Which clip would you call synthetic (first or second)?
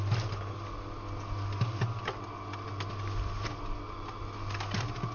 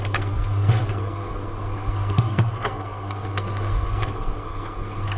second